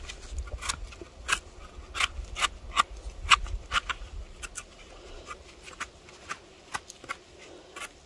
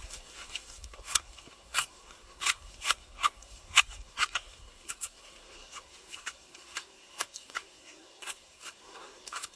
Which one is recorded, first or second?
first